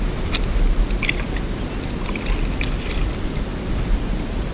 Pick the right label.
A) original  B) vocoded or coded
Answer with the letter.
A